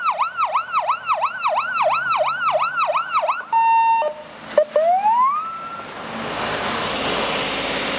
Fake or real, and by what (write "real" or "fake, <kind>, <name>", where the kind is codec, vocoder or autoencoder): real